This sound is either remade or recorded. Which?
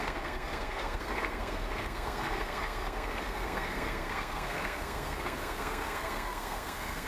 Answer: remade